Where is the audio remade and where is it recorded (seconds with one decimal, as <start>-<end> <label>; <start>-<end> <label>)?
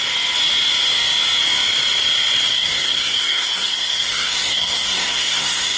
0.0-2.5 recorded; 2.5-5.8 remade